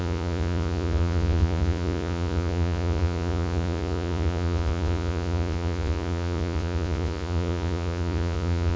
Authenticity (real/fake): fake